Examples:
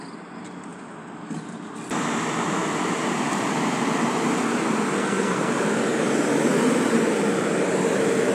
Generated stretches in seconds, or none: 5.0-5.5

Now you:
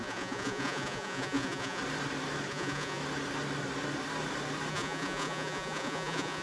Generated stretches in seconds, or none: 0.0-1.8; 2.5-3.0; 4.7-6.4

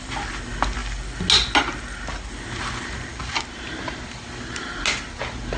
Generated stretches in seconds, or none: none